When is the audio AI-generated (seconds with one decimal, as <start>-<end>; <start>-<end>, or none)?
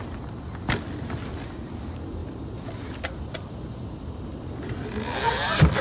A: none